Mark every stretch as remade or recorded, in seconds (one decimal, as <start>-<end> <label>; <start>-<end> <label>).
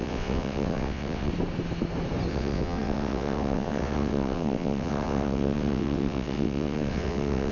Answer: 0.0-1.3 remade; 1.3-2.3 recorded; 2.3-7.5 remade